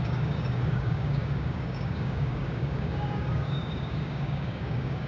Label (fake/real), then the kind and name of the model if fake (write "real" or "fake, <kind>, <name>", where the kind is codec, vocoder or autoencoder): fake, codec, DAC